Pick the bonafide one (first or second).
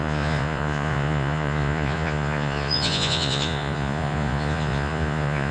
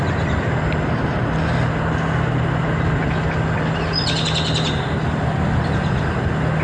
second